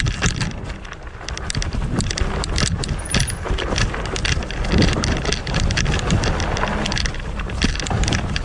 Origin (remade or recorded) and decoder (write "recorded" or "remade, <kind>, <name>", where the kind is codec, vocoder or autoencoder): recorded